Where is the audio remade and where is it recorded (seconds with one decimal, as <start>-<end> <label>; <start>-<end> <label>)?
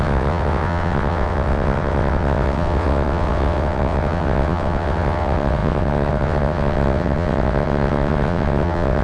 0.0-9.0 remade